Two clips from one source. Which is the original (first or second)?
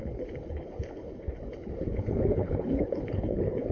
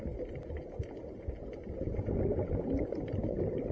second